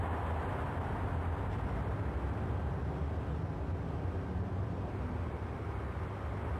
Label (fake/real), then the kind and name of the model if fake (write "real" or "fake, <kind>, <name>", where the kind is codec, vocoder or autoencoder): real